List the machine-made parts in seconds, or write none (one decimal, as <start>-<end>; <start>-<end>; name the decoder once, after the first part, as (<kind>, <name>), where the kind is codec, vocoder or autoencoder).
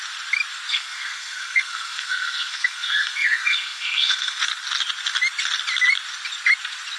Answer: 0.7-4.4 (codec, SNAC)